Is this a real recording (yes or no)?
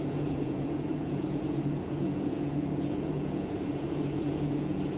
no